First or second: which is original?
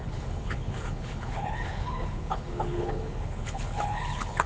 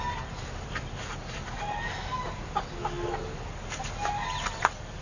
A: second